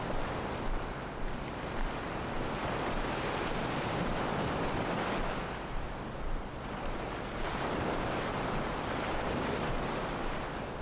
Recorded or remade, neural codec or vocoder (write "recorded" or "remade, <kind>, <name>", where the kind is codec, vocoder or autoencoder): recorded